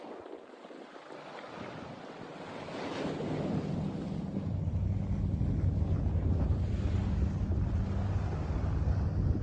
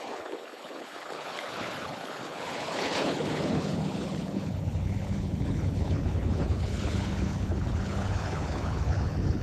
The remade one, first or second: second